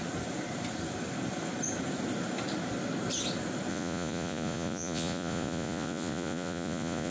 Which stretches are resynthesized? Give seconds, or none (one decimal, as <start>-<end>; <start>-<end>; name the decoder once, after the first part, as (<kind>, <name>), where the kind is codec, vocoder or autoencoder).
3.7-7.1 (vocoder, Vocos)